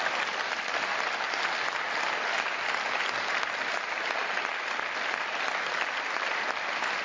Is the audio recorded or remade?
recorded